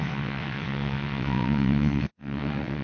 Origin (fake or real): fake